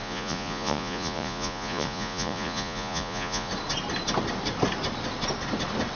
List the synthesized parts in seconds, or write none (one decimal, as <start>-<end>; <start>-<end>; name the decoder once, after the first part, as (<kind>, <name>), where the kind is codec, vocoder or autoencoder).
0.0-3.5 (vocoder, Vocos)